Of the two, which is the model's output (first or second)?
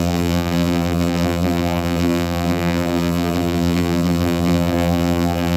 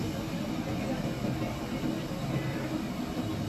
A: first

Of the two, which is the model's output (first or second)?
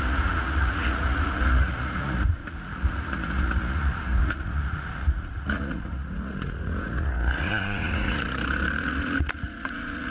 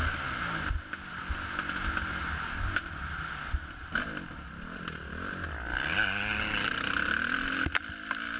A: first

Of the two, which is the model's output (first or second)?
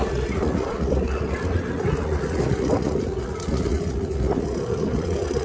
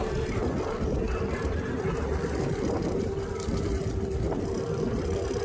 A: first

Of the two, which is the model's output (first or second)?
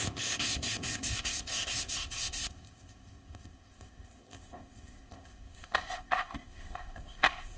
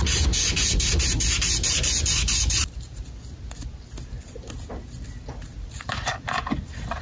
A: first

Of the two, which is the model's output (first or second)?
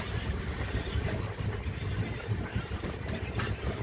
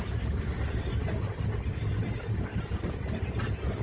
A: first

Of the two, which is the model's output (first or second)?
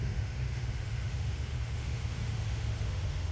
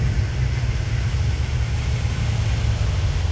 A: first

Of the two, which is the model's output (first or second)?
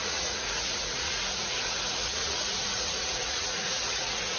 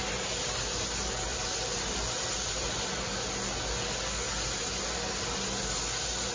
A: first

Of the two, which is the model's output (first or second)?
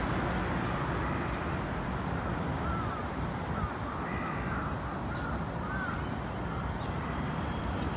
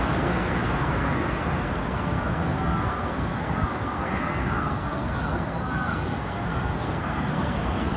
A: second